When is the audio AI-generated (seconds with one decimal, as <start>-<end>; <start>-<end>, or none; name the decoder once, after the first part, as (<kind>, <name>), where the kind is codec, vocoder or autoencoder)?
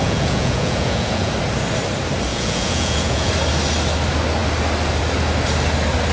0.0-1.3 (vocoder, Vocos); 2.3-3.3